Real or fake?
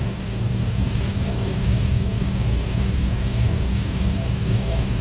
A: fake